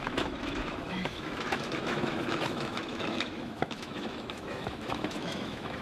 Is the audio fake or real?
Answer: fake